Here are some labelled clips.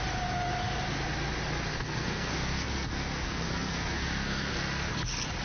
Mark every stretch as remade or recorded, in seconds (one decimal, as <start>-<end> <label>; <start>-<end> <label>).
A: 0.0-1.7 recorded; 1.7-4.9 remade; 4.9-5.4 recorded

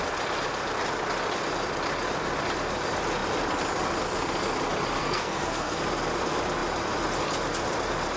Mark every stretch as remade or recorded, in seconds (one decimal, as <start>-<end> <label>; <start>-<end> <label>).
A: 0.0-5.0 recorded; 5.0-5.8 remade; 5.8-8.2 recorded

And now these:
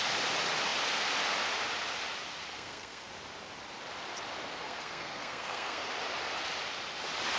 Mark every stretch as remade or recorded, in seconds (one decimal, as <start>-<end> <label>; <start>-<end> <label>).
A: 0.0-2.5 recorded; 2.5-3.1 remade; 3.1-4.5 recorded; 4.5-5.9 remade; 5.9-7.4 recorded

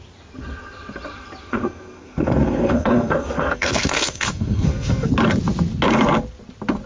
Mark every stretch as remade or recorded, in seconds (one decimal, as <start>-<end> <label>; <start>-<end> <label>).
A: 0.0-1.5 recorded; 1.5-5.1 remade; 5.1-6.9 recorded